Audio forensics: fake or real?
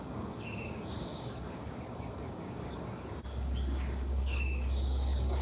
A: fake